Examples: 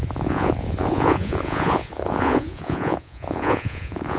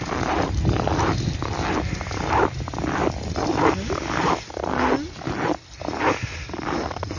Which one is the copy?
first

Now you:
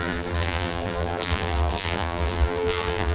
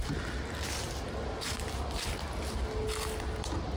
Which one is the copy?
first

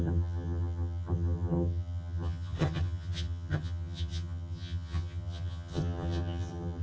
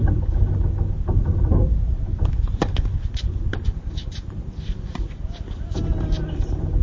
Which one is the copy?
first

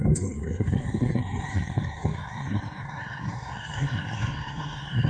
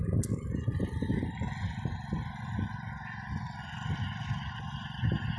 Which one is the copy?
first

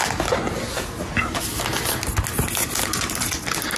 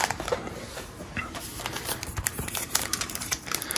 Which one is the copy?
second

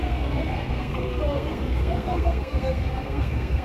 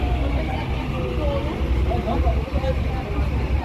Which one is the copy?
first